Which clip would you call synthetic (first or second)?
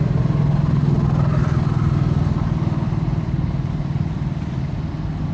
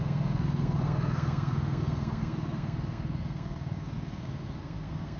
second